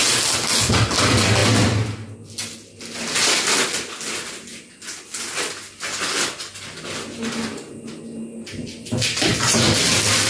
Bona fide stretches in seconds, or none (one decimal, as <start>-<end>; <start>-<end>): 0.0-10.3